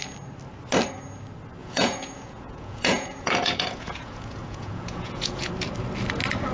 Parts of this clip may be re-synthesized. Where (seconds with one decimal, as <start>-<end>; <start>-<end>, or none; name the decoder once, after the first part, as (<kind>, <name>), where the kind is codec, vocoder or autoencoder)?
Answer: 1.6-5.5 (vocoder, Vocos)